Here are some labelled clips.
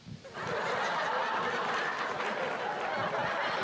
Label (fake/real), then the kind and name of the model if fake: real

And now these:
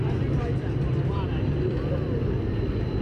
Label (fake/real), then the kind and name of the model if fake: real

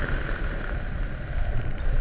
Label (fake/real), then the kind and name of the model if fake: real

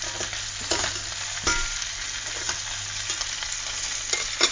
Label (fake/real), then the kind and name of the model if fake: real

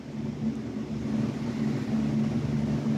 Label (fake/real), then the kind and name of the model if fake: real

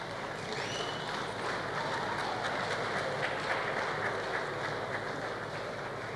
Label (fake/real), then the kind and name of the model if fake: real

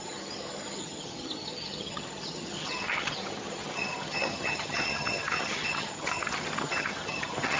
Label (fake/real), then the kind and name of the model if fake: fake, vocoder, HiFi-GAN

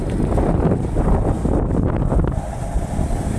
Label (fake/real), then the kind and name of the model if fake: real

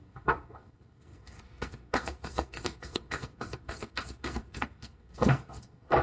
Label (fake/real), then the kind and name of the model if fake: fake, codec, SNAC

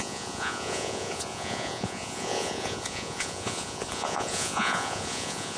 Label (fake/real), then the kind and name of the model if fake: fake, vocoder, Vocos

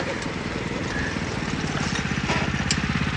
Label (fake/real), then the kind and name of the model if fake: real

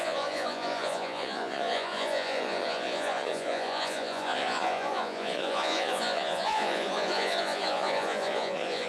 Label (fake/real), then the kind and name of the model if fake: fake, vocoder, Vocos